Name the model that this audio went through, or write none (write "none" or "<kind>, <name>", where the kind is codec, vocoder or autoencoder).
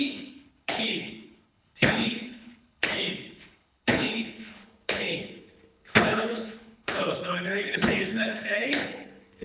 codec, HILCodec